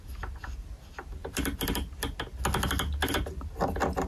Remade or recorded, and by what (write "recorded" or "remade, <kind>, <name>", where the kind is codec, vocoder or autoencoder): recorded